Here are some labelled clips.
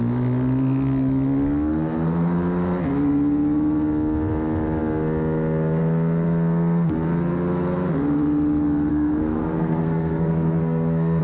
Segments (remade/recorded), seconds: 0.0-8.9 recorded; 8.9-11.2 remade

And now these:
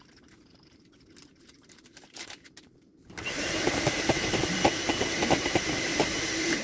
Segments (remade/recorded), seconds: 0.0-4.4 remade; 4.4-5.2 recorded; 5.2-6.6 remade

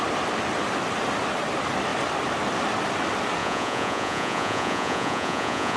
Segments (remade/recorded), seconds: 0.0-3.4 recorded; 3.4-5.8 remade

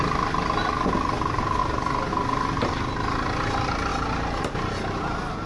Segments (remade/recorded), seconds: 0.0-5.5 recorded